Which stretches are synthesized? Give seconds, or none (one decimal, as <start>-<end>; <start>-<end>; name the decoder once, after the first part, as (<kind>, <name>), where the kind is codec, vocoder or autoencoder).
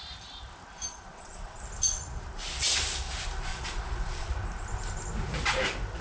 0.9-1.6 (vocoder, Vocos); 3.5-4.3